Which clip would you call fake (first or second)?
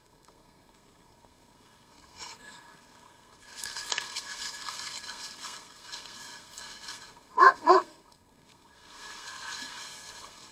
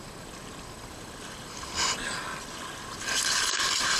first